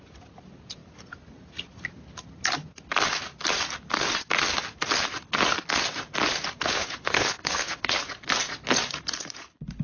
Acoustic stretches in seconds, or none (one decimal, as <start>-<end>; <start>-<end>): 0.0-6.6; 8.0-9.8